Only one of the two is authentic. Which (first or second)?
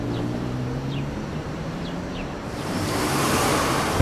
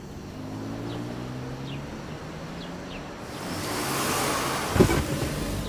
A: second